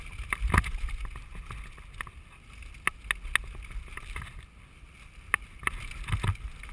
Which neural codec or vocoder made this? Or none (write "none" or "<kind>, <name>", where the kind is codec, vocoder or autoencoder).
none